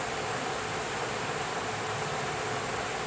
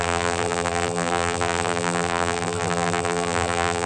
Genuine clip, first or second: first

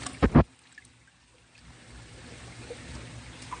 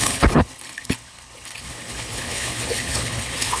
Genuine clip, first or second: first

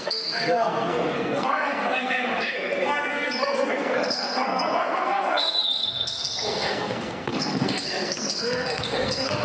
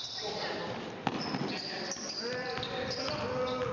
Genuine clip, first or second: second